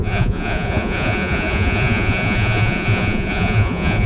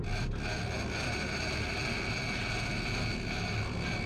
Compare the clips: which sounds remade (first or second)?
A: first